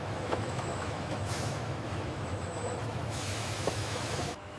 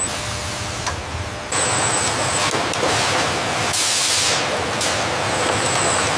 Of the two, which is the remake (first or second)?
first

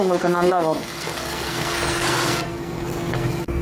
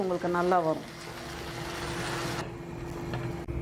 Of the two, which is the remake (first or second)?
first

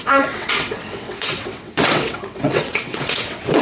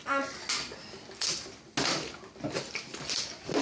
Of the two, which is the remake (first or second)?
first